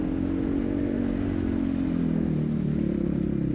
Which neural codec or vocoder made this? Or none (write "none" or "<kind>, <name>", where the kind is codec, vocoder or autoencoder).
none